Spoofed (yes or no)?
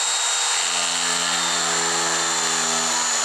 no